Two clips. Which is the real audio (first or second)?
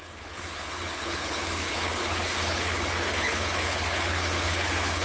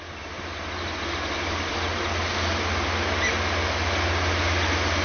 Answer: second